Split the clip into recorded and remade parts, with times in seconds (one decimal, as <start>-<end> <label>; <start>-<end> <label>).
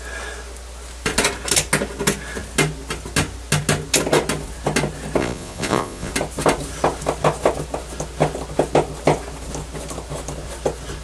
0.0-5.2 recorded; 5.2-6.1 remade; 6.1-11.0 recorded